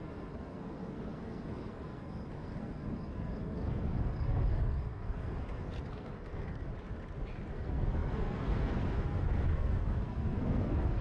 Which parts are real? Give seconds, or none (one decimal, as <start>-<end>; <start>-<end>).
6.7-7.5